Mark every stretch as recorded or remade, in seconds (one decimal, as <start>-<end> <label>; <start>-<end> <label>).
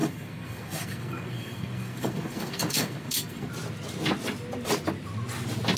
0.0-3.5 remade; 3.5-5.8 recorded